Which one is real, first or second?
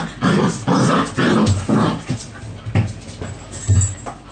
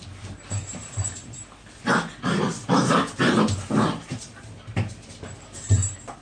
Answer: first